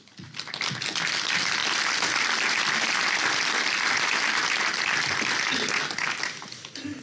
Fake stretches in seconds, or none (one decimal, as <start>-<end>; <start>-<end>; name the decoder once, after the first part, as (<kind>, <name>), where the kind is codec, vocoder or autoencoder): none